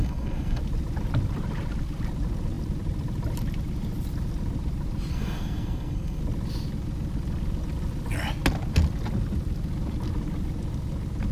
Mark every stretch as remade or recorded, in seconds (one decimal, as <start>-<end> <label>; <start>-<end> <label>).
0.0-0.6 remade; 0.6-5.1 recorded; 5.1-6.2 remade; 6.2-11.3 recorded